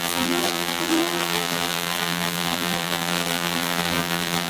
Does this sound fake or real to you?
fake